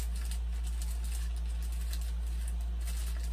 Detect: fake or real real